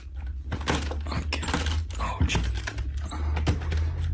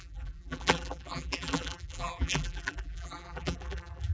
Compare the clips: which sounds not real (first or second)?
second